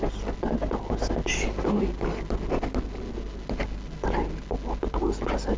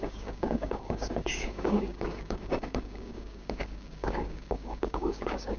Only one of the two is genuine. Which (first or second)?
first